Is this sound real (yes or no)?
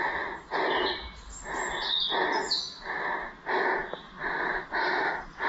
yes